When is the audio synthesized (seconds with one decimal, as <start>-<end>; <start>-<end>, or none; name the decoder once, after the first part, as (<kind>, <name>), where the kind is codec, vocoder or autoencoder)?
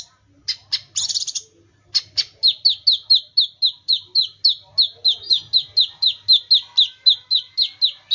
none